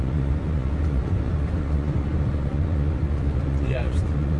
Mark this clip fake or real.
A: fake